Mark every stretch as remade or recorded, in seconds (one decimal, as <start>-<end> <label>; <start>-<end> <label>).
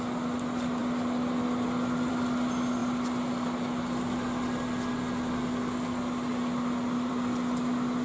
0.0-8.0 recorded